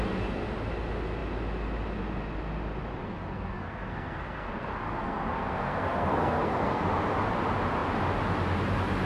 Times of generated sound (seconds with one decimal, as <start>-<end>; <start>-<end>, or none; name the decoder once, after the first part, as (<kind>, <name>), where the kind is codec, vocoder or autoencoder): 3.0-6.8 (codec, SNAC)